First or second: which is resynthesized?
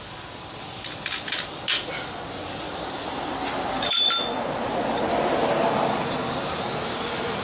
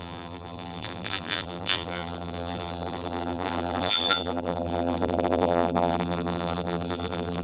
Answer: second